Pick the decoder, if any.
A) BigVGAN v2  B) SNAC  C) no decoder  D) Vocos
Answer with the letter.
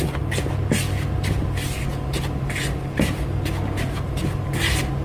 C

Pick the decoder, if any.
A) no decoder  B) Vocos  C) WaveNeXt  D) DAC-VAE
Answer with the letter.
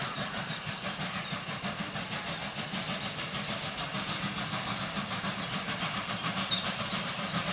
A